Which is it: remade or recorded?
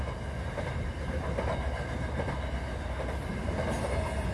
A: recorded